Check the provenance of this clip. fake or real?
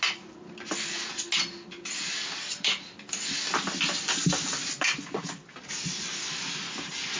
real